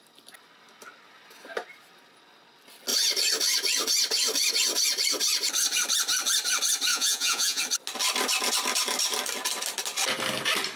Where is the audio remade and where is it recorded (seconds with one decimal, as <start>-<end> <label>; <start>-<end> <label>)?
0.0-6.9 recorded; 6.9-7.6 remade; 7.6-10.8 recorded